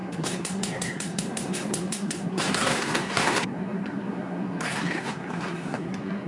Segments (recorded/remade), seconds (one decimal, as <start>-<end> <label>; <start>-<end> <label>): 0.0-6.3 remade